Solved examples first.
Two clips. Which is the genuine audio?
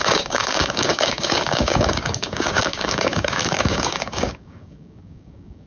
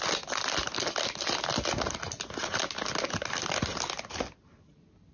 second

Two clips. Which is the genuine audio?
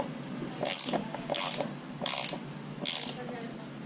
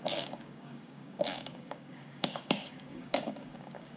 first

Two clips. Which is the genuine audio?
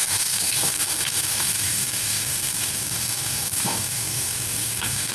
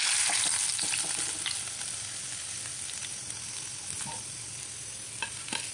second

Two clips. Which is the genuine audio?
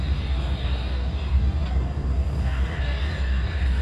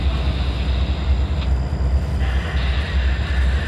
second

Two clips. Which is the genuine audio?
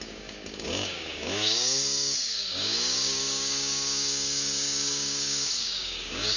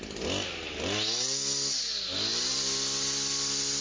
second